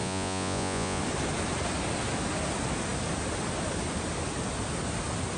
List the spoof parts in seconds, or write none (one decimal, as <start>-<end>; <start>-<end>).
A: 0.0-1.0